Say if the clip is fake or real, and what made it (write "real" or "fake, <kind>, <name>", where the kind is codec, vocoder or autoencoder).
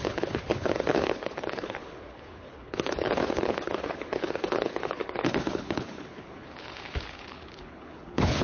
fake, codec, HILCodec